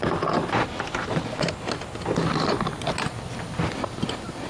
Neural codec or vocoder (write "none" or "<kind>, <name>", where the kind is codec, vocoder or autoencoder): none